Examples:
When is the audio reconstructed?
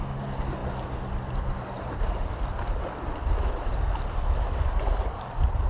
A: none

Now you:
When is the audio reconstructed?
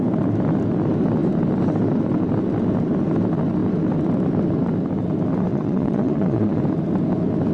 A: 5.5-6.6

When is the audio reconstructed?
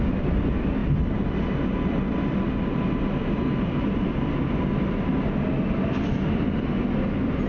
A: none